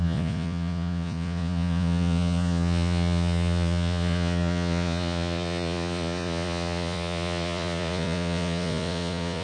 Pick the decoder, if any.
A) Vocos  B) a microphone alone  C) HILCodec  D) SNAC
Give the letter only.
A